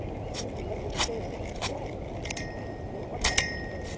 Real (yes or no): yes